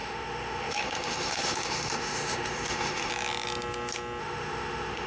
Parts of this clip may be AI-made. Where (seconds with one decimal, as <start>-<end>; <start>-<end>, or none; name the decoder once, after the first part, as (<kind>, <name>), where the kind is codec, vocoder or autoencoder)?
0.0-3.1 (autoencoder, DAC-VAE); 4.2-5.1